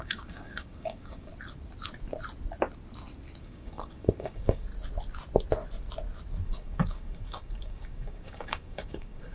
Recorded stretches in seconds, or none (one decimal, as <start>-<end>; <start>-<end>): 1.3-3.4; 4.7-6.4